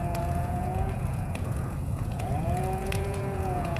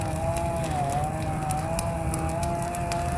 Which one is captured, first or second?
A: second